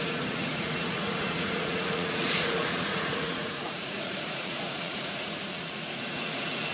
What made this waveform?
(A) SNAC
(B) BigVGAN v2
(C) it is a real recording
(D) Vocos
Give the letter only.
D